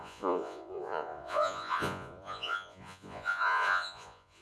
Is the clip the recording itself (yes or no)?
no